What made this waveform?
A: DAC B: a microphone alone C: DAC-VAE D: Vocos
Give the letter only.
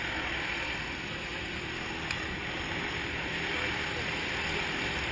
B